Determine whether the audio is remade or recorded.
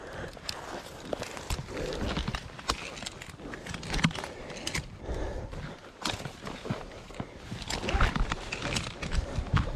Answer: recorded